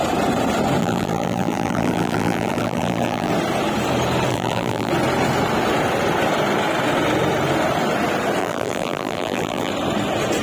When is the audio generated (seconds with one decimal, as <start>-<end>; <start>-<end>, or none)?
0.8-3.3; 4.3-4.9; 8.4-9.7